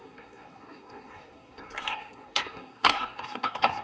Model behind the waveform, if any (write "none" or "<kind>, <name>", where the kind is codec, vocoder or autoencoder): codec, SNAC